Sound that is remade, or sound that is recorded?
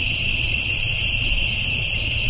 recorded